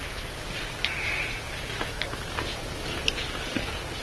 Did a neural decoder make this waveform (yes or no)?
no